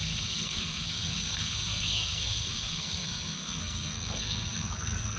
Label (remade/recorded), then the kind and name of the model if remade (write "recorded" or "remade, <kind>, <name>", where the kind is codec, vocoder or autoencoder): remade, codec, SNAC